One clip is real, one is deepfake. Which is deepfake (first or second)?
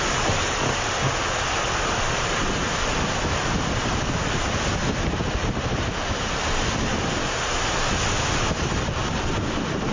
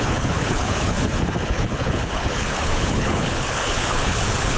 second